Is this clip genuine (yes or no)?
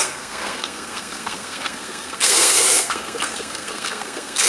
no